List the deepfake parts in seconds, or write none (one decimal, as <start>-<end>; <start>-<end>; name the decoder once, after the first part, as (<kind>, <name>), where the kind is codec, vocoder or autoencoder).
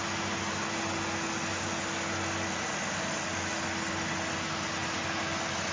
none